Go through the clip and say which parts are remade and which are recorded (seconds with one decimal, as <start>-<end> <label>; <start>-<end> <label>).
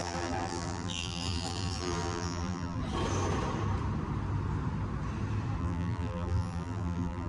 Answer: 0.0-2.8 remade; 2.8-5.6 recorded; 5.6-7.3 remade